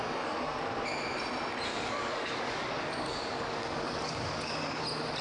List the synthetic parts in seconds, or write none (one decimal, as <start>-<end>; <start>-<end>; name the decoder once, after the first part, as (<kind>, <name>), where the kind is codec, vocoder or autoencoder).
1.7-4.8 (codec, DAC)